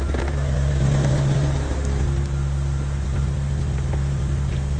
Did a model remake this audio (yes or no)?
no